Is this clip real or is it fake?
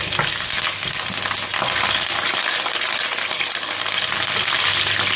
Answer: real